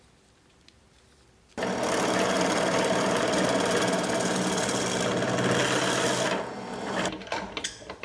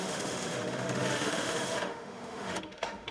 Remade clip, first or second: second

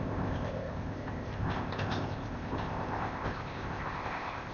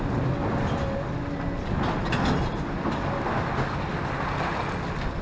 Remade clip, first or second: first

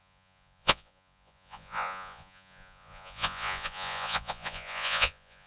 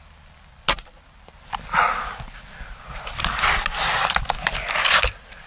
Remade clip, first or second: first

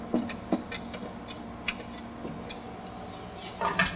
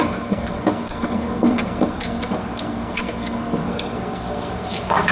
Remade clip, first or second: second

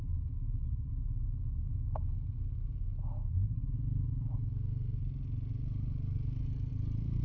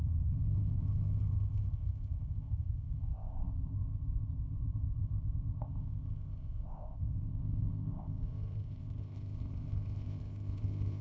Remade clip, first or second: second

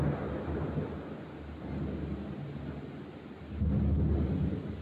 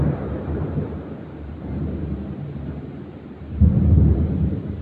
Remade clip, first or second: second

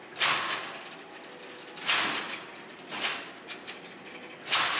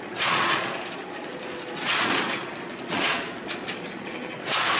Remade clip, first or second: second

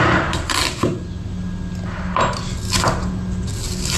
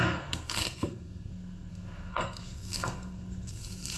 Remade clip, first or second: second